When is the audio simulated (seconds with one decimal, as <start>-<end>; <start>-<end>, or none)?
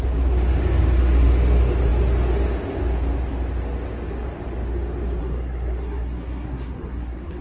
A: 5.2-7.4